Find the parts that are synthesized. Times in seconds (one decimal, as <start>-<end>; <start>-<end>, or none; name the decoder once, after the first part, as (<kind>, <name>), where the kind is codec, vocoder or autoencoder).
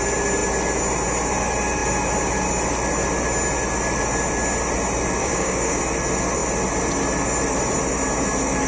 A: 5.2-5.8 (codec, DAC)